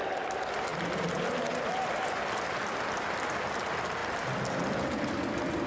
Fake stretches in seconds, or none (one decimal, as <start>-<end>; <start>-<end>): none